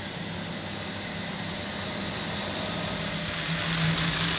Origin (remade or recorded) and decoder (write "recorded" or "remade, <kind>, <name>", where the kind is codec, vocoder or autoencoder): recorded